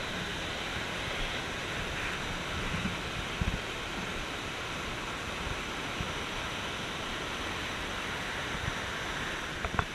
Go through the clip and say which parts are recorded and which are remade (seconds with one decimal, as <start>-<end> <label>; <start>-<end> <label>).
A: 0.0-9.9 recorded

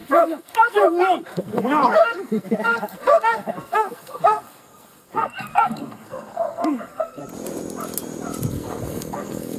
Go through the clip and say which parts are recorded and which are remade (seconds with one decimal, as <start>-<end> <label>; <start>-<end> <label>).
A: 0.0-7.2 remade; 7.2-8.5 recorded; 8.5-9.6 remade